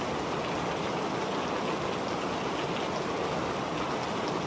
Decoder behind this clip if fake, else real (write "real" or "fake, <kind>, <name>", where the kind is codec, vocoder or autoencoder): real